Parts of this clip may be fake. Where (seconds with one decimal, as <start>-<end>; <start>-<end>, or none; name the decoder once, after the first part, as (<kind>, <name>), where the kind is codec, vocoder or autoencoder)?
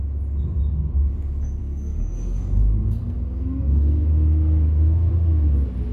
1.6-5.1 (codec, SNAC)